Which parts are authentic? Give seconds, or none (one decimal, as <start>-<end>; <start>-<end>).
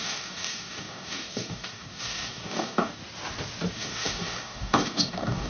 3.0-3.7